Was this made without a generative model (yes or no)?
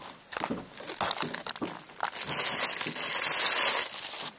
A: yes